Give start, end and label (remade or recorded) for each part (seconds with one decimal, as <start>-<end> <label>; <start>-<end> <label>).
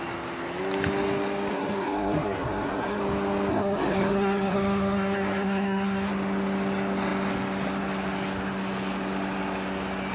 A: 0.0-1.5 recorded; 1.5-3.0 remade; 3.0-3.5 recorded; 3.5-6.1 remade; 6.1-10.1 recorded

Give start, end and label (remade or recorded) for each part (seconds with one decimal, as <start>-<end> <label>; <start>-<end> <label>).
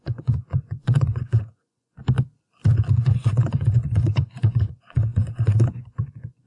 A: 0.0-2.0 remade; 2.0-2.9 recorded; 2.9-6.5 remade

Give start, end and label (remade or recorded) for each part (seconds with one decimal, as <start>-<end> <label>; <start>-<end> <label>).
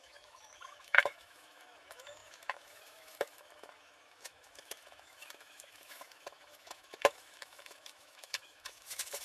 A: 0.0-9.2 remade